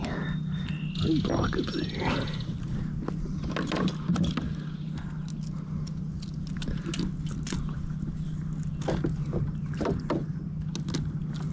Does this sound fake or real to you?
real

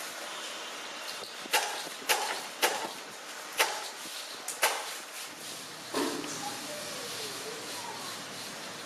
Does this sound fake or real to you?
real